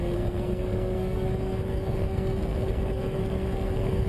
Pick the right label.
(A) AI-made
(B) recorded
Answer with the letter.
A